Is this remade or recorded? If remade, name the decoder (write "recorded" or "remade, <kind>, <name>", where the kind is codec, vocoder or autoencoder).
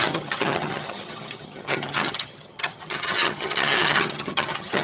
remade, vocoder, HiFi-GAN